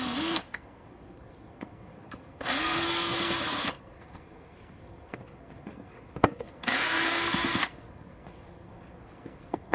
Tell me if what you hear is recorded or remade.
remade